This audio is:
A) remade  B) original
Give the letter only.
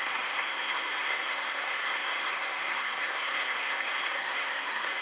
A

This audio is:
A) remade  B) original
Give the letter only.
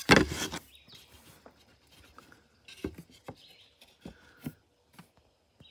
B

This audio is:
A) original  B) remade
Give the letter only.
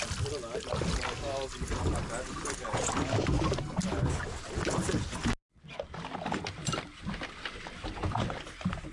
A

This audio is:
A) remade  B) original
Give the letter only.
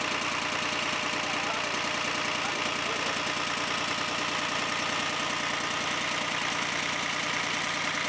B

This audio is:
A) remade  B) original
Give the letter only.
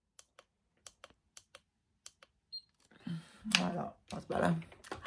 B